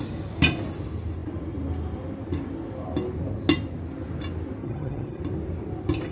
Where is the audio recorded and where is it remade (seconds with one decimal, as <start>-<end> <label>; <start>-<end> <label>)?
0.0-4.6 recorded; 4.6-5.2 remade; 5.2-6.1 recorded